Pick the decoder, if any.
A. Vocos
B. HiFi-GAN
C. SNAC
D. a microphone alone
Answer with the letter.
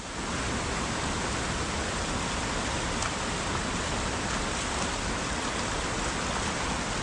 D